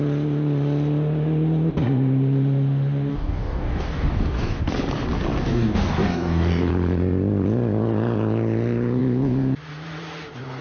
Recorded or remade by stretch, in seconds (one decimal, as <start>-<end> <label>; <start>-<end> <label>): 0.0-3.1 recorded; 3.1-4.6 remade; 4.6-5.5 recorded; 5.5-6.7 remade; 6.7-10.6 recorded